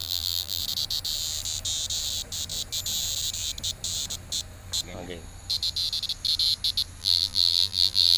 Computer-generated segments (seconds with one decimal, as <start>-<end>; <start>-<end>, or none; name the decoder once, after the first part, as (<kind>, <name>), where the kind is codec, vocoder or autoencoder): 0.0-0.6 (vocoder, BigVGAN v2); 7.0-8.2